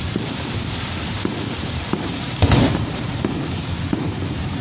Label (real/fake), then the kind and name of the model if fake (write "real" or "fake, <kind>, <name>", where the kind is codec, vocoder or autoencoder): fake, vocoder, BigVGAN v2